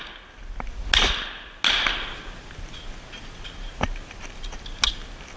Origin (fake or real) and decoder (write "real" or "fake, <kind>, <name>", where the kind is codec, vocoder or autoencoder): real